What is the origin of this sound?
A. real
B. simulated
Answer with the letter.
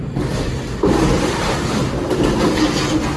A